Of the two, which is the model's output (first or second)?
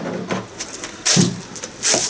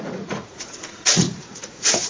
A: second